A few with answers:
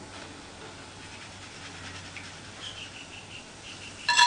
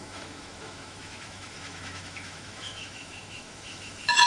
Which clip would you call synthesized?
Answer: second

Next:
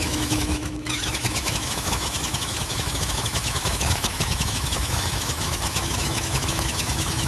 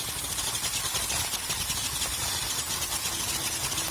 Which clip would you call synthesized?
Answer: first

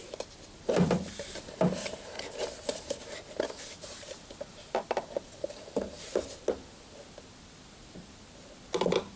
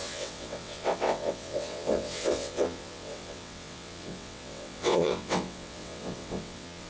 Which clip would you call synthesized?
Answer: second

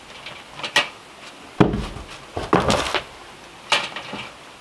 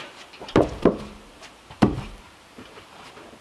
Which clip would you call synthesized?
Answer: second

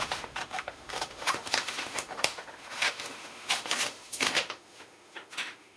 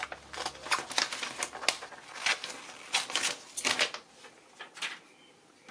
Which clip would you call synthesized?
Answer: first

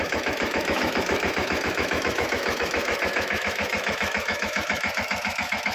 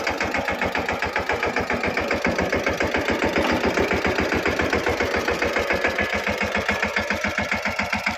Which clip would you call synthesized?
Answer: first